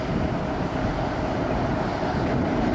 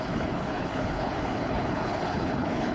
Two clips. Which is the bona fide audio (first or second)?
first